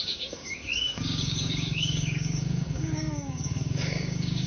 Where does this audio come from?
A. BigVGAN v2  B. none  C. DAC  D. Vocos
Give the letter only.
C